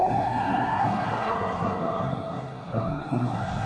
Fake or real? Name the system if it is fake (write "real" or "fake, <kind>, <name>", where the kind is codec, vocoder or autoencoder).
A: fake, codec, SNAC